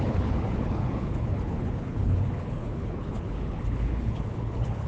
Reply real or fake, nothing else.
fake